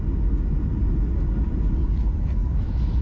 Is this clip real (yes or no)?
yes